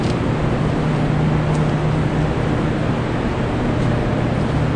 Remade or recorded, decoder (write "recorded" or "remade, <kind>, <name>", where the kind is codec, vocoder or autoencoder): recorded